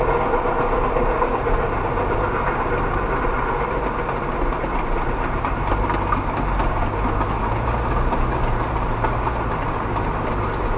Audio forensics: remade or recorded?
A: recorded